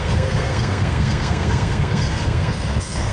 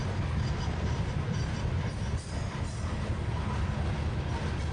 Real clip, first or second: second